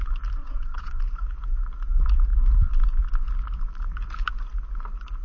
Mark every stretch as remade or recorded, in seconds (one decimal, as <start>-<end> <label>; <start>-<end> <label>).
0.0-0.4 recorded; 0.4-1.0 remade; 1.0-5.2 recorded